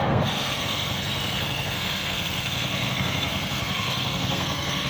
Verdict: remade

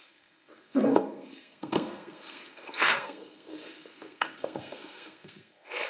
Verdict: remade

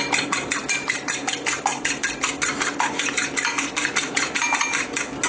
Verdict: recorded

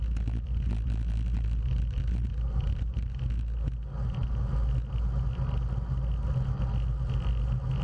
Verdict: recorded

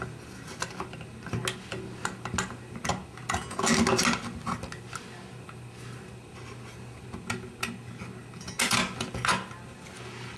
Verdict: recorded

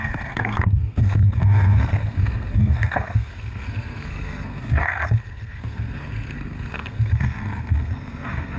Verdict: remade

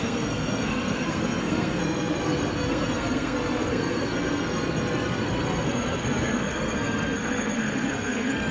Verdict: remade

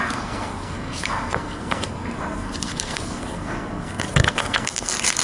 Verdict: remade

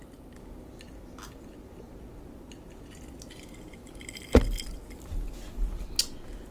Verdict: recorded